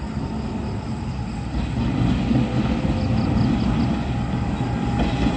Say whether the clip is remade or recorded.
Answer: recorded